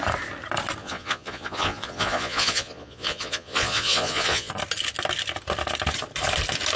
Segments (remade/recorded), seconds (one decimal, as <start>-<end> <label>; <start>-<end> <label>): 0.0-0.8 recorded; 0.8-4.5 remade; 4.5-6.8 recorded